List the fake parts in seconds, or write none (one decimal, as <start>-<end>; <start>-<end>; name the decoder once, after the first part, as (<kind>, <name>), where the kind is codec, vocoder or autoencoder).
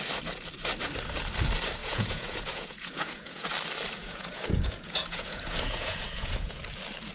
1.8-3.5 (vocoder, Vocos); 4.0-6.6